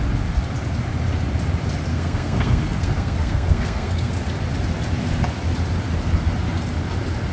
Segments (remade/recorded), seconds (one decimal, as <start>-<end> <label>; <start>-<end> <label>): 0.0-1.9 recorded; 1.9-4.1 remade; 4.1-7.3 recorded